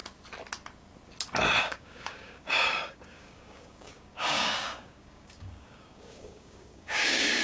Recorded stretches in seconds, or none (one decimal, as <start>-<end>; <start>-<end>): 0.0-1.6